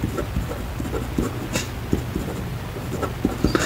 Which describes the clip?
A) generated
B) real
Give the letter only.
A